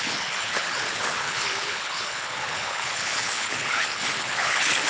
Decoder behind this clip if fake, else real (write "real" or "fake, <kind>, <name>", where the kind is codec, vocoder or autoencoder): fake, codec, HILCodec